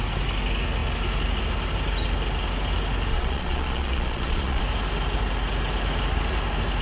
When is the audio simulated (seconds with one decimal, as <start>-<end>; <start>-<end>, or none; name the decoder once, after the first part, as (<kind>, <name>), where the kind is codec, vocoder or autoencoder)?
3.1-4.6 (vocoder, Vocos)